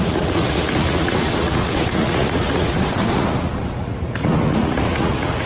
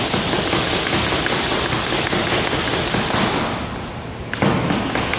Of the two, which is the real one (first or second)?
second